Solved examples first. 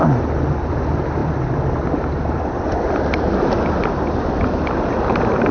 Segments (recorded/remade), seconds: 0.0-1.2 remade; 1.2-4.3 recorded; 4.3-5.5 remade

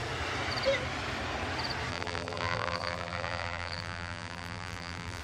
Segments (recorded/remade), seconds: 0.0-1.9 recorded; 1.9-5.2 remade

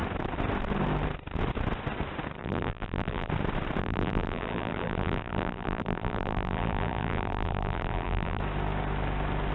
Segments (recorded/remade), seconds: 0.0-2.4 recorded; 2.4-3.3 remade; 3.3-3.8 recorded; 3.8-8.4 remade; 8.4-9.5 recorded

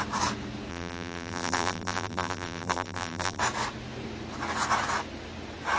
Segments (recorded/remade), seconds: 0.0-0.7 recorded; 0.7-3.4 remade; 3.4-5.8 recorded

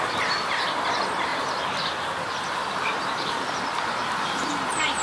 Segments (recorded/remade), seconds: 0.0-1.3 remade; 1.3-3.5 recorded; 3.5-5.0 remade

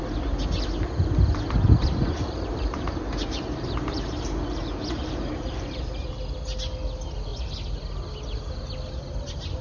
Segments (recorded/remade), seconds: 0.0-1.8 recorded; 1.8-6.1 remade; 6.1-9.6 recorded

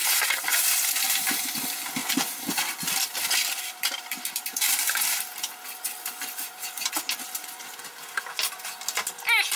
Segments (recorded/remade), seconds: 0.0-1.5 remade; 1.5-2.0 recorded; 2.0-6.9 remade; 6.9-9.6 recorded

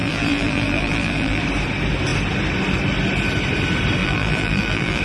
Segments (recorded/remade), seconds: 0.0-1.4 remade; 1.4-4.0 recorded; 4.0-5.0 remade